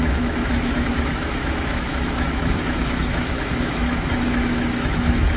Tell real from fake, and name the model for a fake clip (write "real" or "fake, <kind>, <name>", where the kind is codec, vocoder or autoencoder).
fake, autoencoder, DAC-VAE